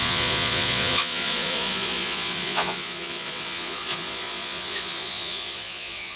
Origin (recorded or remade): remade